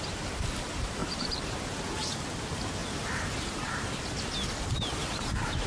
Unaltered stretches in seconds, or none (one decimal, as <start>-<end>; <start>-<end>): 0.0-1.0; 1.6-2.8; 4.0-5.0